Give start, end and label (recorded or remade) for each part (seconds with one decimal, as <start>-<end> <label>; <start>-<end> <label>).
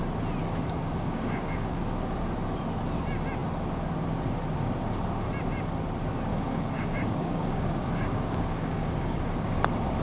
0.0-0.4 recorded; 0.4-1.8 remade; 1.8-6.3 recorded; 6.3-9.6 remade; 9.6-10.0 recorded